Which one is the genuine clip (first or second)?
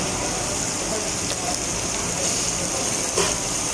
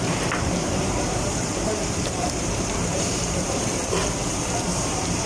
first